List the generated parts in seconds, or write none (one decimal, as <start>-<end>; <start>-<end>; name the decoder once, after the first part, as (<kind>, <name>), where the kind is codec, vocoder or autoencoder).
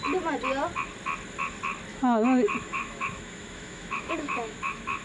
1.9-5.0 (autoencoder, DAC-VAE)